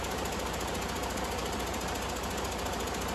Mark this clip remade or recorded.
recorded